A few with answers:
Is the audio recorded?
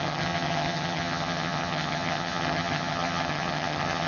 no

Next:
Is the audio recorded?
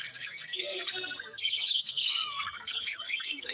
no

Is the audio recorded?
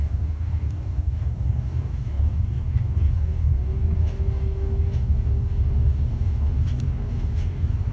no